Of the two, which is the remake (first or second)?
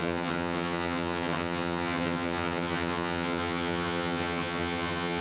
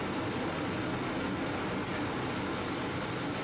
first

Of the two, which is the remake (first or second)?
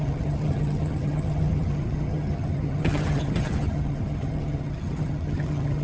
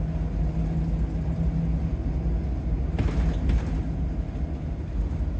first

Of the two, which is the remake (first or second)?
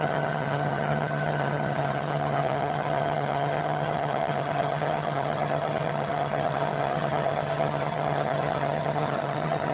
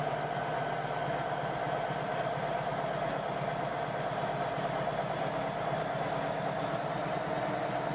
first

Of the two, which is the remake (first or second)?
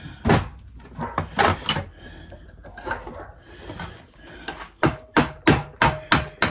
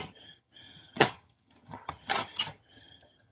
second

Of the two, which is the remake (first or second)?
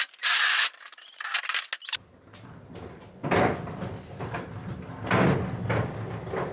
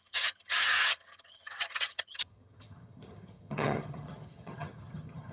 second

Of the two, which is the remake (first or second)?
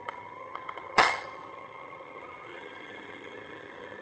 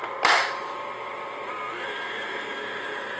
first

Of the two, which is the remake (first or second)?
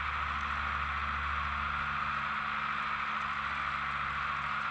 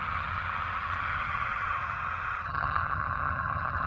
second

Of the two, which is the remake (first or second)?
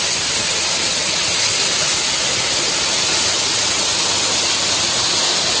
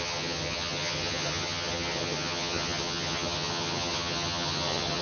second